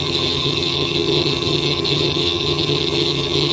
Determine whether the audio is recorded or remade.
remade